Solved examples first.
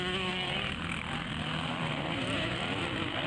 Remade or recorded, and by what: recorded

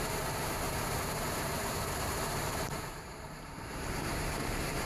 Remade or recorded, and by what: remade, vocoder, BigVGAN v2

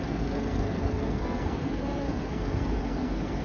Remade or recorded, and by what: remade, codec, SNAC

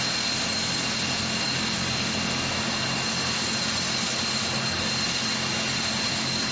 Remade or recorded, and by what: recorded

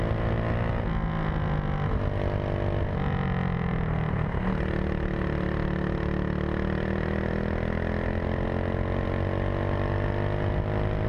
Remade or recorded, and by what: recorded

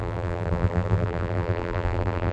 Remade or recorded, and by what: remade, vocoder, BigVGAN v2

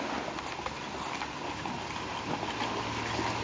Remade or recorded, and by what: recorded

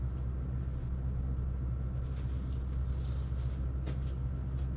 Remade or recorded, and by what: recorded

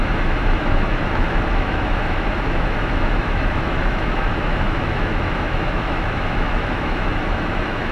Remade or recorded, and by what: remade, autoencoder, DAC-VAE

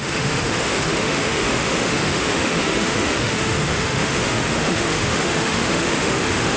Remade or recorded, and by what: remade, autoencoder, DAC-VAE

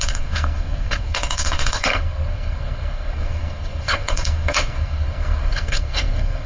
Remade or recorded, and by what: remade, codec, SNAC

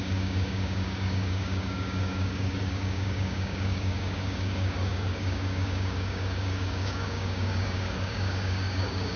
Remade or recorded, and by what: remade, codec, DAC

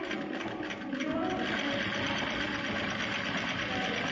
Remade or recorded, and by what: recorded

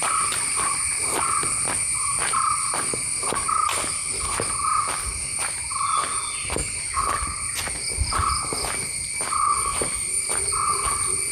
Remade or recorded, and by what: recorded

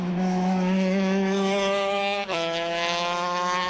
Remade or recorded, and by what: remade, autoencoder, DAC-VAE